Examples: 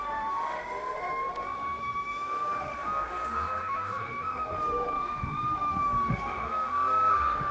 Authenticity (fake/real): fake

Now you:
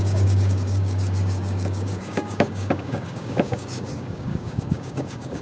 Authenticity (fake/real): fake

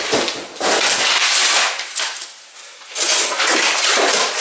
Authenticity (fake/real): real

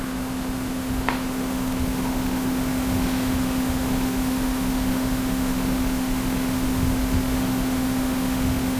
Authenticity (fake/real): fake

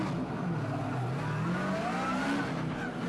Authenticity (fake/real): real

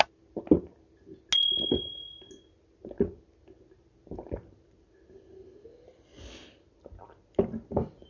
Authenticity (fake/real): real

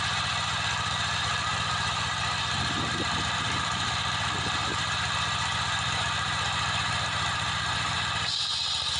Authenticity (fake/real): real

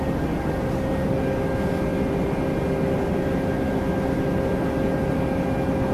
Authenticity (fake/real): real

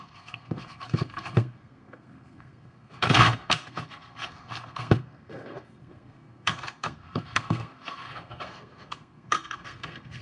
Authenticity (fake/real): fake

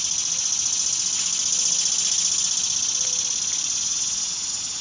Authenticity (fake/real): real